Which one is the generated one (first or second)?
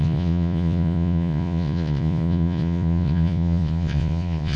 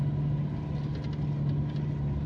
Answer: first